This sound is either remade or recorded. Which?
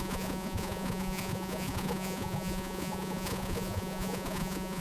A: remade